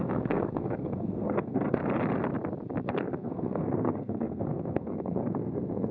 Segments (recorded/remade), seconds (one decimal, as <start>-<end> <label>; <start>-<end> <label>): 0.0-1.8 remade; 1.8-2.9 recorded; 2.9-5.9 remade